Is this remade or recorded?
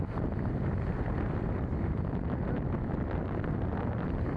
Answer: recorded